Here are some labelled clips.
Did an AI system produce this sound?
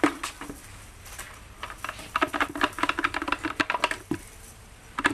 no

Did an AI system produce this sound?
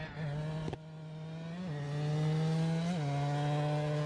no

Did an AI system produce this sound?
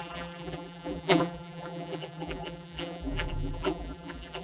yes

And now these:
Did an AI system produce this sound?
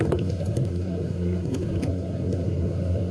yes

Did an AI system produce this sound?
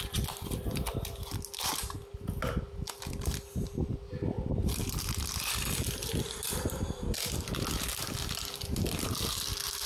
no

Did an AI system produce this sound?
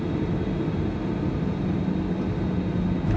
no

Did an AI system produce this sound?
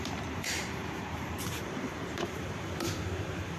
yes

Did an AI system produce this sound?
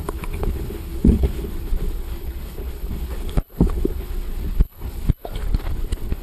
yes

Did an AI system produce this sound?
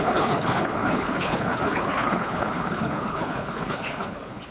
yes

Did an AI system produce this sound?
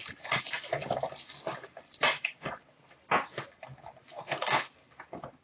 no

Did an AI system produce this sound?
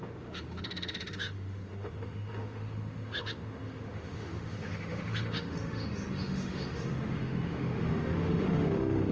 yes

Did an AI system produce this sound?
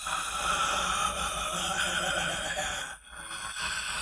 no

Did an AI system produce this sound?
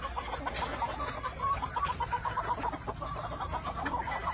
no